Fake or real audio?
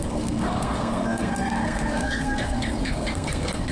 fake